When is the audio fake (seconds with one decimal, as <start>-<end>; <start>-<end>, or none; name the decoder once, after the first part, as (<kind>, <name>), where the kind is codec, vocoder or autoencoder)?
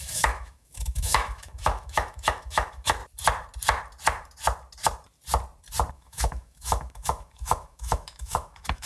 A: 0.0-3.0 (autoencoder, DAC-VAE); 5.9-8.9